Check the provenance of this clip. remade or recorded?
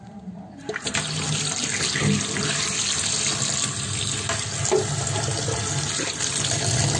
recorded